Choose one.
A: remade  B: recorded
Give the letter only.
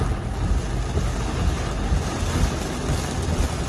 B